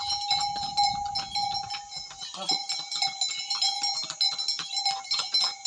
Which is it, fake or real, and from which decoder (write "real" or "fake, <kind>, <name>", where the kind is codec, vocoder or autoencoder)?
real